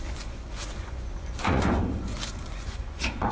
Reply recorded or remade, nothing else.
remade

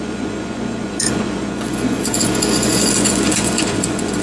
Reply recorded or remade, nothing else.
remade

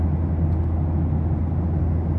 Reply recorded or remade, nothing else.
recorded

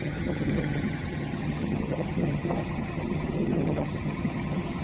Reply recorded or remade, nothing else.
remade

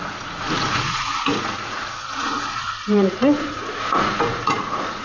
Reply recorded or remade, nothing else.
remade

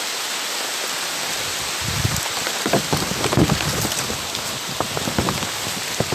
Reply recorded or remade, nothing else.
recorded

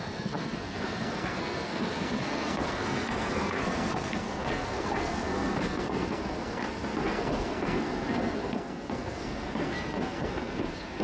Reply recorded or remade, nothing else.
remade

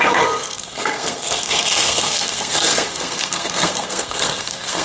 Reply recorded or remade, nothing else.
remade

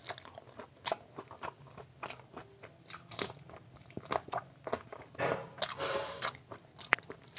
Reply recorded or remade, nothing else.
recorded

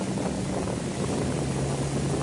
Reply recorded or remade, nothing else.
recorded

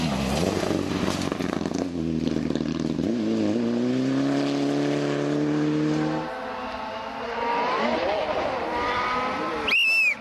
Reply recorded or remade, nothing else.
recorded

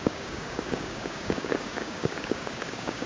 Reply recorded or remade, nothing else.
remade